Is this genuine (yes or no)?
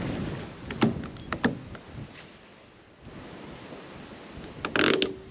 yes